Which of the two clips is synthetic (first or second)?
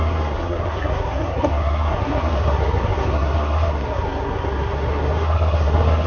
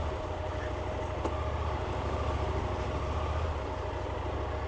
first